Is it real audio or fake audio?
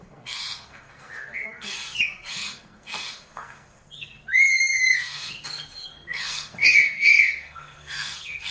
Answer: fake